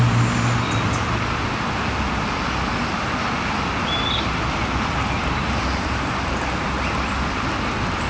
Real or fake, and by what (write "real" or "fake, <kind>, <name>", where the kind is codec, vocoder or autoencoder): real